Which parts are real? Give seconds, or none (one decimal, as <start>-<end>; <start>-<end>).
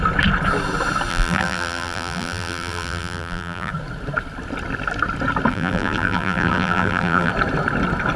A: 0.0-1.1; 3.7-5.5; 7.3-8.2